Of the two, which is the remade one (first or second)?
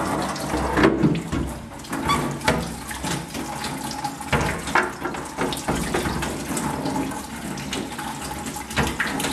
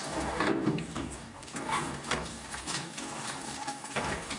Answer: second